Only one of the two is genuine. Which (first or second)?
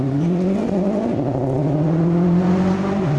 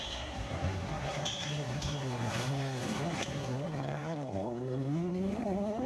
first